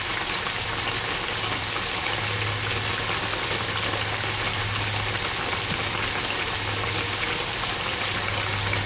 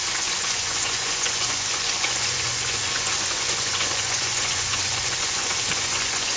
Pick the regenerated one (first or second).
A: second